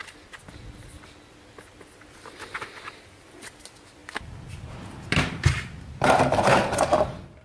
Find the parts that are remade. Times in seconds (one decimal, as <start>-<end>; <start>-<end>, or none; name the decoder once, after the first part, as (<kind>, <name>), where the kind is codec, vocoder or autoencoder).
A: none